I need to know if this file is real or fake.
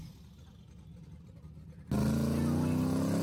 real